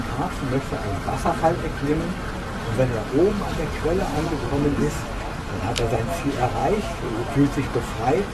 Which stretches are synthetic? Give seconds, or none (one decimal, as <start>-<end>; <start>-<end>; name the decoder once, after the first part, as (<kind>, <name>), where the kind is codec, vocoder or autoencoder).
6.6-7.3 (autoencoder, DAC-VAE)